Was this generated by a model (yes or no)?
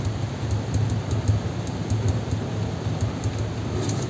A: no